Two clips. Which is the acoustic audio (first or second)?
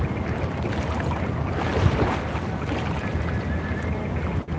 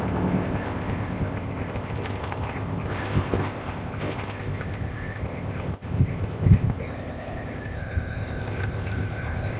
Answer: first